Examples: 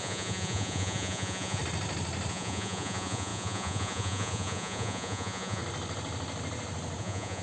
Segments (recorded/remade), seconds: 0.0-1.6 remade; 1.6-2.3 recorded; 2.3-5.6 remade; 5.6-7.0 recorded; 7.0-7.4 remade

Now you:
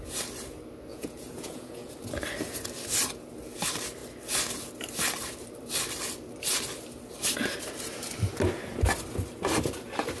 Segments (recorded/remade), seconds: 0.0-0.9 recorded; 0.9-1.9 remade; 1.9-10.2 recorded

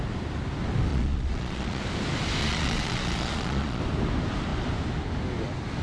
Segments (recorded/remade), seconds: 0.0-0.9 recorded; 0.9-1.8 remade; 1.8-2.4 recorded; 2.4-3.8 remade; 3.8-5.8 recorded

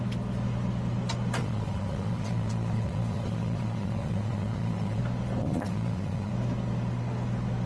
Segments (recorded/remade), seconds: 0.0-1.4 recorded; 1.4-5.0 remade; 5.0-5.4 recorded; 5.4-6.3 remade; 6.3-7.7 recorded